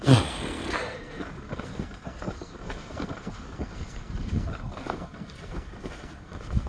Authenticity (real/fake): fake